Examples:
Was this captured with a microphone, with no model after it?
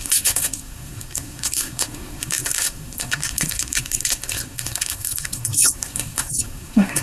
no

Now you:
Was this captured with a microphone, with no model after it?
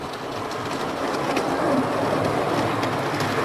yes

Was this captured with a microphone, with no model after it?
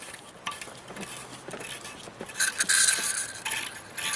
yes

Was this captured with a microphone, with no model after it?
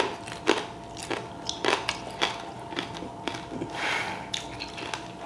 yes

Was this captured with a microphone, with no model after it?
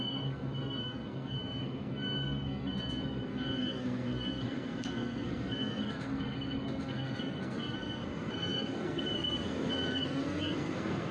no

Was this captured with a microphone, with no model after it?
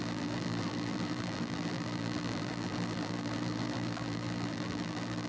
no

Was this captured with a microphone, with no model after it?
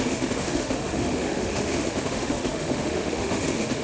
no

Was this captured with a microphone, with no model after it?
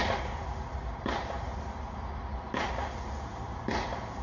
yes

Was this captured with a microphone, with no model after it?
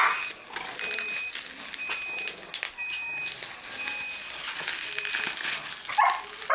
yes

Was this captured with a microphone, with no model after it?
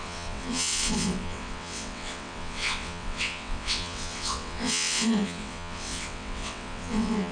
no